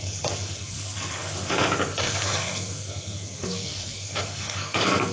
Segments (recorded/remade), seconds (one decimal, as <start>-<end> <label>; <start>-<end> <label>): 0.0-5.1 remade

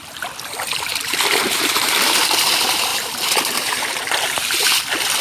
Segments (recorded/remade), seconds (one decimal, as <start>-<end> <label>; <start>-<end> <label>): 0.0-0.9 recorded; 0.9-2.2 remade; 2.2-2.9 recorded; 2.9-4.8 remade; 4.8-5.2 recorded